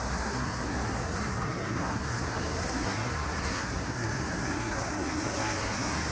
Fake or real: fake